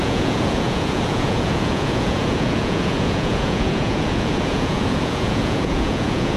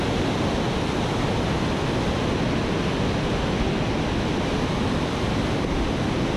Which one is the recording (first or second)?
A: second